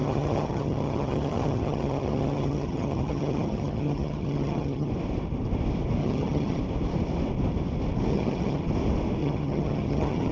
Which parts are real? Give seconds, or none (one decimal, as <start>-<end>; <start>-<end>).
4.9-6.0; 6.6-8.1; 8.7-9.2